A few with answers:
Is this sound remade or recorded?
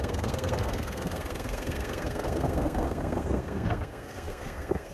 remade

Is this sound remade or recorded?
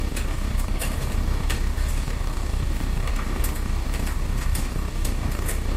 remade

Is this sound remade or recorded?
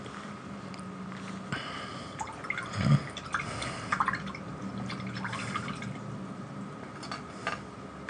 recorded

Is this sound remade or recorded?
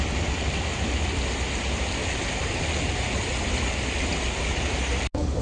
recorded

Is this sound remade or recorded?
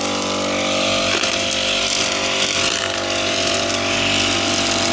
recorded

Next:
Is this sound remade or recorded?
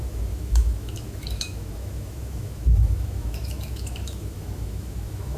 remade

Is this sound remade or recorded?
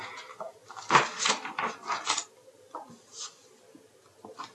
recorded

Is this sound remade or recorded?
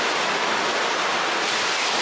recorded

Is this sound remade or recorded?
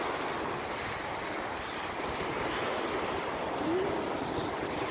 recorded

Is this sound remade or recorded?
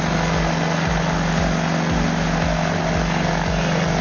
recorded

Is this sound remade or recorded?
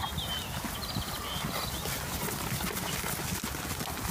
recorded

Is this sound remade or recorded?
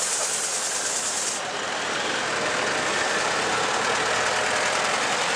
recorded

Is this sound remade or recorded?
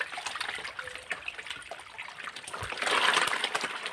recorded